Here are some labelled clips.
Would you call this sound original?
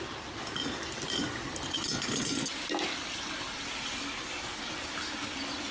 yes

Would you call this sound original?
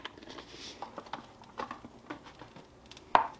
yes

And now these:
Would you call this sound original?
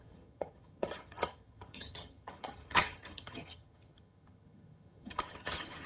no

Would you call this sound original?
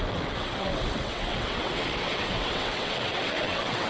no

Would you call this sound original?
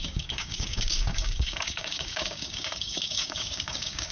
no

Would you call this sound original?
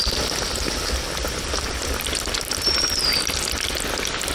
yes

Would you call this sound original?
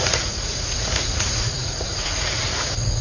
no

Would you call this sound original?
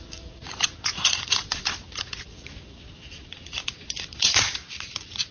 no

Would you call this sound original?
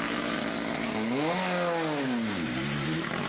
yes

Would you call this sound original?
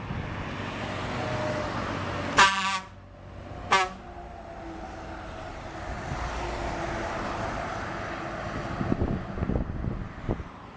yes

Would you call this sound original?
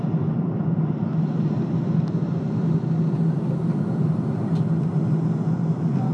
yes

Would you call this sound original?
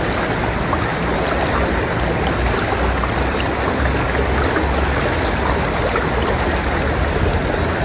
yes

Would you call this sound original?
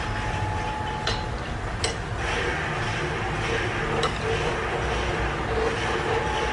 yes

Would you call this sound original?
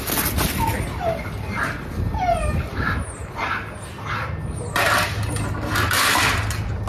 yes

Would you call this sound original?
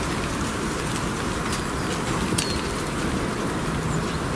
no